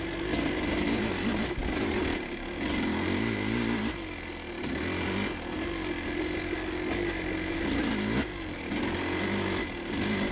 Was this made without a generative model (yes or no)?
yes